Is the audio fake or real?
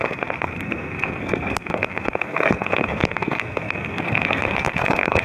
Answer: fake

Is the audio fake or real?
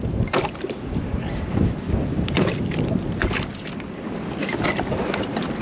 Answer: real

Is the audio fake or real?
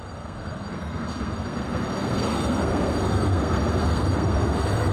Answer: fake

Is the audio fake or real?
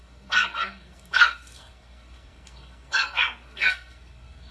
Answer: fake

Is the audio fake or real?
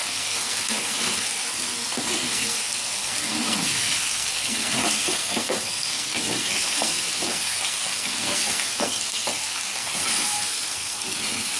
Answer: fake